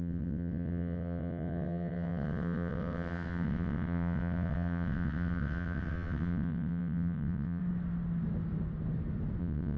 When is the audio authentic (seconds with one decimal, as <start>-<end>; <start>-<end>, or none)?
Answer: 7.6-9.4